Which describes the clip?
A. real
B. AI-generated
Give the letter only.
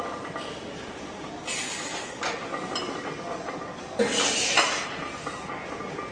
A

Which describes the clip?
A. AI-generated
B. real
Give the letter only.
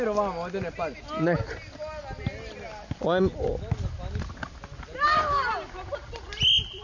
B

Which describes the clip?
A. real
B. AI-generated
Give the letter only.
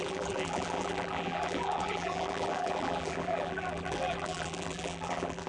B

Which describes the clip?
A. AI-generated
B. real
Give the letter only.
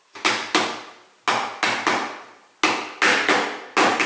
B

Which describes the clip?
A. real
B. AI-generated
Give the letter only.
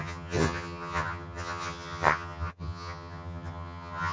B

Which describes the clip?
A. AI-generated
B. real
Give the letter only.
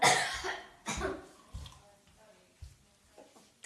B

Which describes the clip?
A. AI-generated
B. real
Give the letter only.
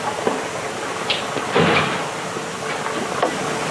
A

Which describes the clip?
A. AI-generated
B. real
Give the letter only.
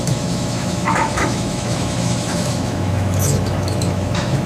A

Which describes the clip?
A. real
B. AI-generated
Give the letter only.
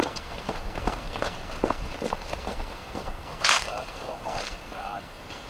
B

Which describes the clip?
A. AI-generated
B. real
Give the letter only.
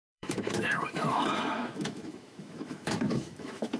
A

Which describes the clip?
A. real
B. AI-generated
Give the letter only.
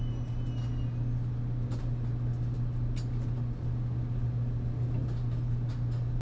A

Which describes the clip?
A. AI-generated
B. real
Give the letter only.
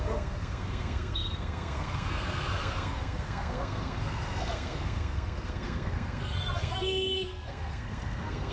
A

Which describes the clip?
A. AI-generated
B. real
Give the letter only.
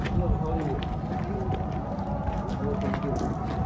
B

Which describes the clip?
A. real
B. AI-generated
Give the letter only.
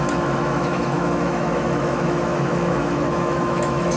B